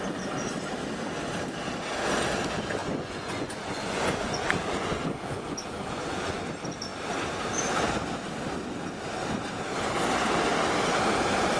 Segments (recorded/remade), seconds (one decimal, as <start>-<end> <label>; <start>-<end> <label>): 0.0-2.8 recorded; 2.8-6.4 remade; 6.4-11.6 recorded